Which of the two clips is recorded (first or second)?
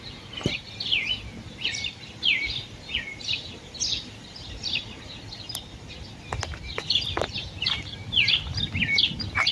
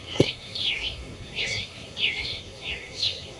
first